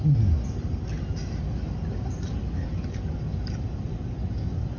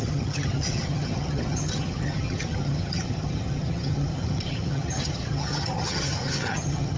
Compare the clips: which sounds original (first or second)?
first